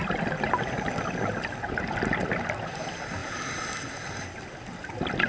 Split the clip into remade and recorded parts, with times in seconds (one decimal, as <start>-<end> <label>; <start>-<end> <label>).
0.0-5.3 recorded